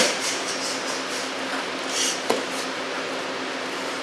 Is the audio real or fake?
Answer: real